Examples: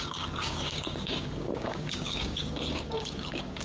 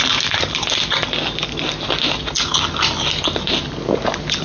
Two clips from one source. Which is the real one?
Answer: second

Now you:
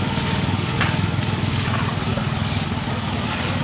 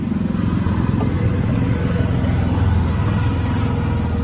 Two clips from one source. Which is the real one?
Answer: second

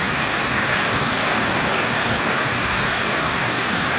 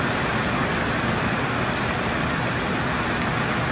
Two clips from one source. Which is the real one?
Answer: second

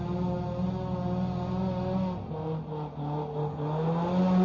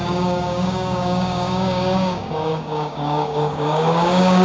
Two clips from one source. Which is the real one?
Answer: first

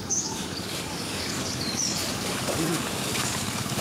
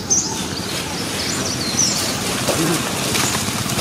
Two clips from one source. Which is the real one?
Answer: second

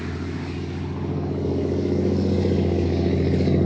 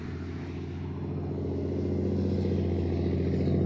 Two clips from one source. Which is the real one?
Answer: second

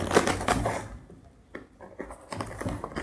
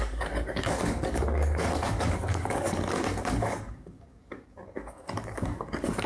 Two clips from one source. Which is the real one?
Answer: first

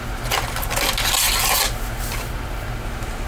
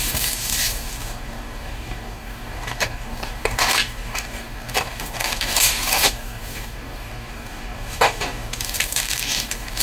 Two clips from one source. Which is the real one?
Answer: first